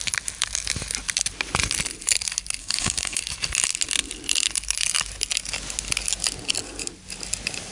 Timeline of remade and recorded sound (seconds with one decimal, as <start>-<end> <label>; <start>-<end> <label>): 0.0-2.6 recorded; 2.6-3.2 remade; 3.2-7.7 recorded